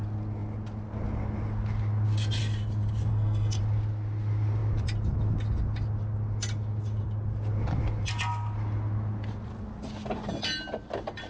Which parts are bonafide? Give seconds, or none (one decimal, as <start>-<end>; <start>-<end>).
0.0-3.1; 3.6-11.3